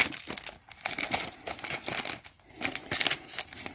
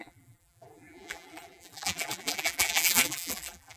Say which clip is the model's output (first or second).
second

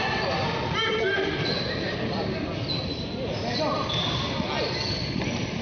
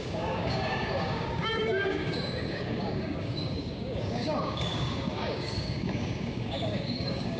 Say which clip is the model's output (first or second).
second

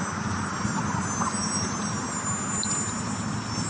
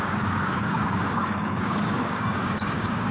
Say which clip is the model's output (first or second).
second